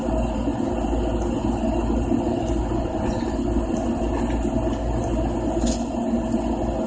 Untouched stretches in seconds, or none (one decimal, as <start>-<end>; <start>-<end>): 0.0-6.9